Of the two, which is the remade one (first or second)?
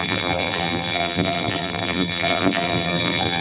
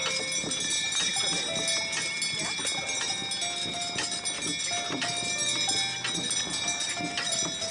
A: first